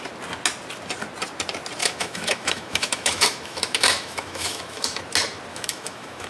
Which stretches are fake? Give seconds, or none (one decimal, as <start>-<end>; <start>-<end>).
1.8-5.0; 5.5-6.3